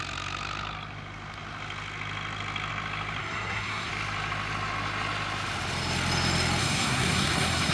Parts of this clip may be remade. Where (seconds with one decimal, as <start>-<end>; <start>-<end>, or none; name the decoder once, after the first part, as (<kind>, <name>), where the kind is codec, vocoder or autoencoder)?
3.2-3.9 (codec, SNAC); 6.6-7.7